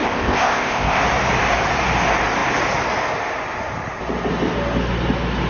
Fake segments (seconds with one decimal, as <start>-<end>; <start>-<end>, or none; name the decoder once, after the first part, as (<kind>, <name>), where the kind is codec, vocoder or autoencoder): 0.0-1.0 (codec, ZipCodec)